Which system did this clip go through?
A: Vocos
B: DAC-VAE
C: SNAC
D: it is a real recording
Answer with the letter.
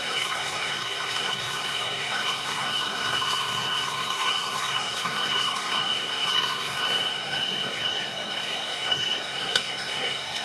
C